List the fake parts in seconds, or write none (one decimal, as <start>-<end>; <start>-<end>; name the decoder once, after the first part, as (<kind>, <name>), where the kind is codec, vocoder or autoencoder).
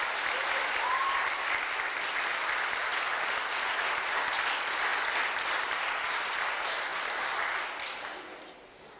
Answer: none